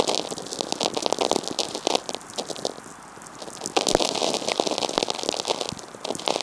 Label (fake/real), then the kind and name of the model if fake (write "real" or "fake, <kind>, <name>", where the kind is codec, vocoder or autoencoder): real